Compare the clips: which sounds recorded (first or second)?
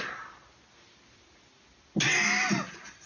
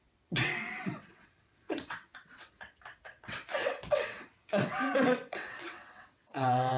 first